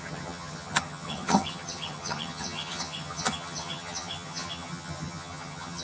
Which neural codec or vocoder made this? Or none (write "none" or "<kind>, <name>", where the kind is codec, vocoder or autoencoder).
vocoder, HiFi-GAN